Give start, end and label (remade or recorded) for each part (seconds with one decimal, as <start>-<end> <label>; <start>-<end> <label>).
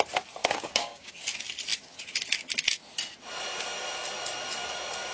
0.0-0.4 recorded; 0.4-1.1 remade; 1.1-5.1 recorded